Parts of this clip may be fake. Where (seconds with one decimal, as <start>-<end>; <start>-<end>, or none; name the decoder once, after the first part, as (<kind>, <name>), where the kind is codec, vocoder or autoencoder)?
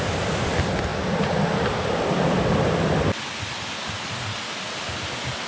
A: none